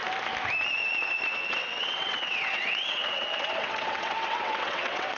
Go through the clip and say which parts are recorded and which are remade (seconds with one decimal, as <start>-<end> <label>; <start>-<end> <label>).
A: 0.0-1.3 recorded; 1.3-5.2 remade